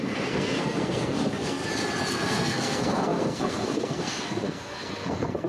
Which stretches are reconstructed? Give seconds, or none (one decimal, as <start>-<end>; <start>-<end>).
0.0-1.6; 2.1-5.5